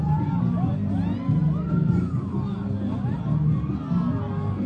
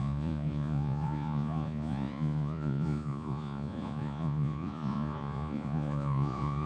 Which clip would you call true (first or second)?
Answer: first